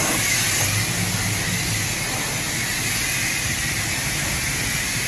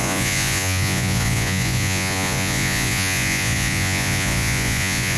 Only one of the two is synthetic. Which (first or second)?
second